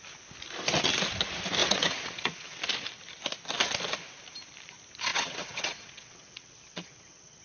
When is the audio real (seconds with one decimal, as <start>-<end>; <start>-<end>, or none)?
0.0-1.6; 2.6-5.1